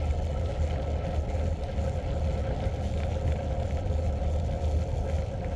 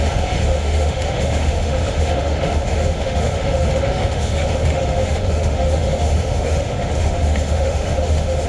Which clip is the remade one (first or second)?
second